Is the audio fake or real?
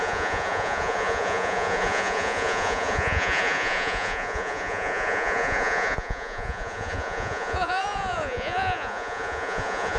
fake